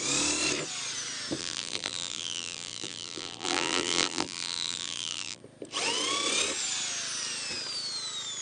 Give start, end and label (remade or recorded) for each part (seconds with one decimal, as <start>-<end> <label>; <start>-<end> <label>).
0.0-1.4 recorded; 1.4-5.4 remade; 5.4-8.4 recorded

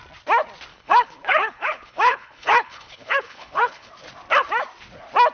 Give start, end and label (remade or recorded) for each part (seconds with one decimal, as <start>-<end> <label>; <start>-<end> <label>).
0.0-0.7 recorded; 0.7-3.9 remade; 3.9-5.3 recorded

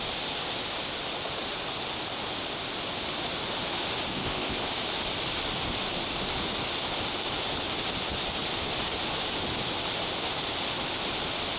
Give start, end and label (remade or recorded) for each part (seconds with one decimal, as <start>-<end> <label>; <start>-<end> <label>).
0.0-4.2 recorded; 4.2-4.7 remade; 4.7-11.6 recorded

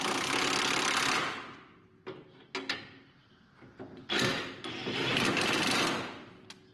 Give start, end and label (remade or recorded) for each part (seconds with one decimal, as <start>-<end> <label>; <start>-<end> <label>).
0.0-3.2 recorded; 3.2-5.8 remade; 5.8-6.7 recorded

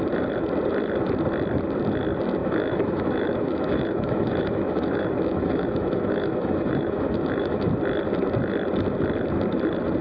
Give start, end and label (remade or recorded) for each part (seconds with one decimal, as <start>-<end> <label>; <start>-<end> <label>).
0.0-2.4 recorded; 2.4-7.7 remade; 7.7-10.0 recorded